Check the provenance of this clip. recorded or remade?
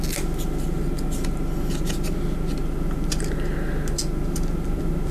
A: recorded